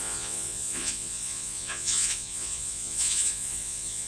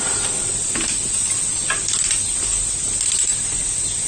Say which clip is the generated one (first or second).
first